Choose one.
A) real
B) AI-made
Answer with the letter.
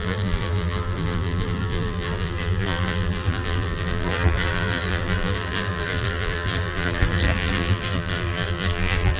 B